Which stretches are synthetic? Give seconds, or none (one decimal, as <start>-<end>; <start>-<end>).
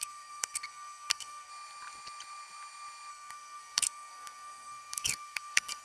0.0-1.5; 3.1-5.8